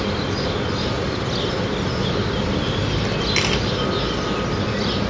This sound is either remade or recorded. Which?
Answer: recorded